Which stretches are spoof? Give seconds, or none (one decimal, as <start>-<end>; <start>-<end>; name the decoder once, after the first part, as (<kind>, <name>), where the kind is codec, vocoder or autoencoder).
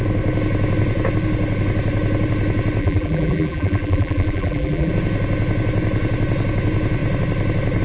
2.8-4.9 (vocoder, BigVGAN v2)